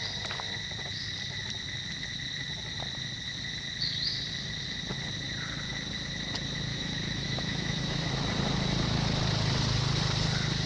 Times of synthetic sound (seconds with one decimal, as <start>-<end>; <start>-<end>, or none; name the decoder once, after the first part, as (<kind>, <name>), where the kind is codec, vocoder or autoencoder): 6.7-8.1 (autoencoder, DAC-VAE)